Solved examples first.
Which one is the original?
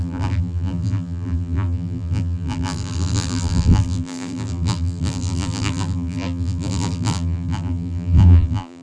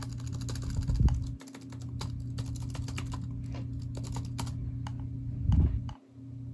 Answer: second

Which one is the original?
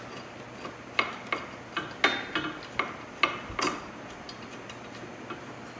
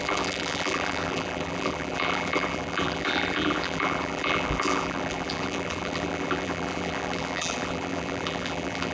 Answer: first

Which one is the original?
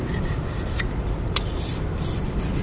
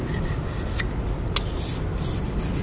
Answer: second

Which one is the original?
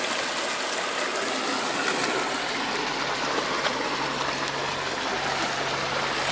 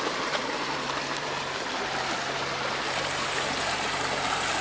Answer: first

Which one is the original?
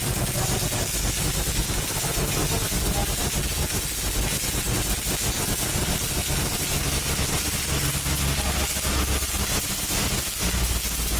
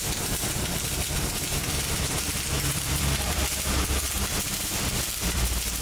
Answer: first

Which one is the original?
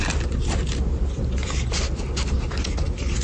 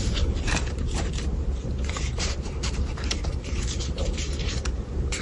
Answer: first